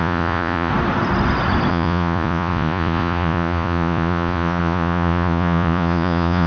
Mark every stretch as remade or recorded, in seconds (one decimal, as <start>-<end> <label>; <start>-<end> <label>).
0.0-0.7 remade; 0.7-1.7 recorded; 1.7-6.5 remade